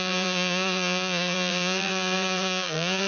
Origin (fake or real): fake